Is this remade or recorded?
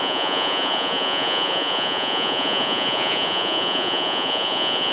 remade